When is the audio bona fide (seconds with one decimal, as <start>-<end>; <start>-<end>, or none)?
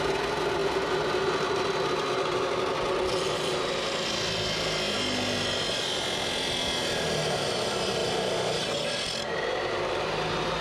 0.0-10.6